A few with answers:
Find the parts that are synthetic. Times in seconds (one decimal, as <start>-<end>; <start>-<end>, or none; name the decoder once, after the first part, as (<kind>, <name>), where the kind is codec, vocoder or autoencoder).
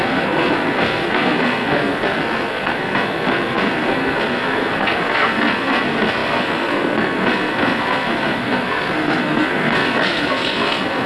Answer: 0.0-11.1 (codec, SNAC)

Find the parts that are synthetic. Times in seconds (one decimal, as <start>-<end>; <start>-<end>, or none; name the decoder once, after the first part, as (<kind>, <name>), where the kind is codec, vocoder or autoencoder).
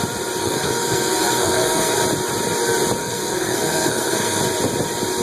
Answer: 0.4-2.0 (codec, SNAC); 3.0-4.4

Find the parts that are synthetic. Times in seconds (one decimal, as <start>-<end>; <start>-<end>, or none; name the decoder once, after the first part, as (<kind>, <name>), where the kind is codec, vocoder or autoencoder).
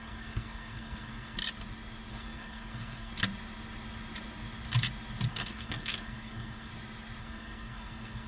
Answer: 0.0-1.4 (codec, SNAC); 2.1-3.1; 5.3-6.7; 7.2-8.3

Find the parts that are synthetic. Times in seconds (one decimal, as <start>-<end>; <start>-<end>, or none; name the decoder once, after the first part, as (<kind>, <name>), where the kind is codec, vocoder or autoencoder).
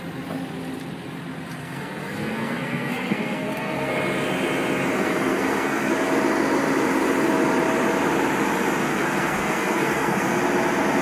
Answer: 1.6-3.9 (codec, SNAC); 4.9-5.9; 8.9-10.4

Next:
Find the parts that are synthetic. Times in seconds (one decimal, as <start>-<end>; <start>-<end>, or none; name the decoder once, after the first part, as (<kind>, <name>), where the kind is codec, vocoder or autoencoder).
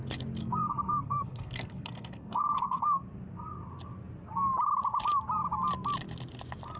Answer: 0.4-3.0 (codec, SNAC)